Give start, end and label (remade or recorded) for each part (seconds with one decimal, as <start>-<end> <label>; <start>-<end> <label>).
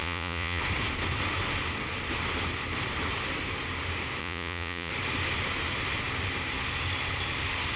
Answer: 0.0-0.6 remade; 0.6-4.2 recorded; 4.2-4.9 remade; 4.9-7.8 recorded